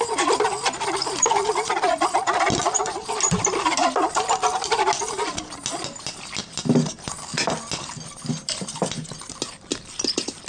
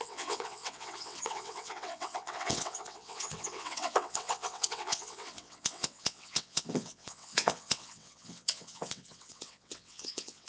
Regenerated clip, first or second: second